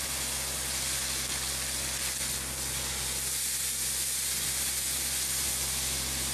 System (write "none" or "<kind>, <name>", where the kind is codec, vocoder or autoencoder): none